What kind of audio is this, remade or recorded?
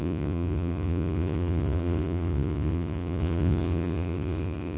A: remade